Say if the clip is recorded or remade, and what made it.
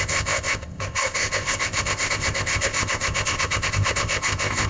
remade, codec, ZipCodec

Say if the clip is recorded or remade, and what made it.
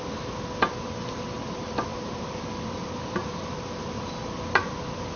recorded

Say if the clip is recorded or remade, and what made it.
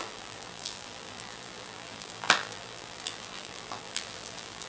remade, vocoder, BigVGAN v2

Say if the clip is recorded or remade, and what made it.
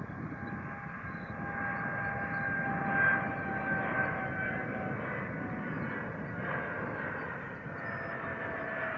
recorded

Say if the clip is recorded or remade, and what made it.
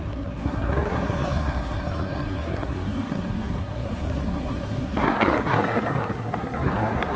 remade, codec, SNAC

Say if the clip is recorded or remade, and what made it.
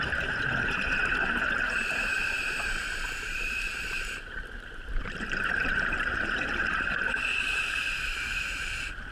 remade, vocoder, BigVGAN v2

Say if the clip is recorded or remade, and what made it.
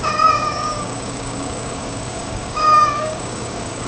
remade, codec, DAC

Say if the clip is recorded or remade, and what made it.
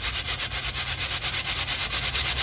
recorded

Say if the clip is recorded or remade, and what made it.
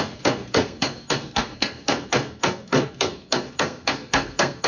remade, codec, SNAC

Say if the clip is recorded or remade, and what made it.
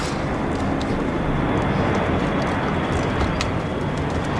recorded